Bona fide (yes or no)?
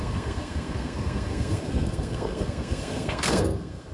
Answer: no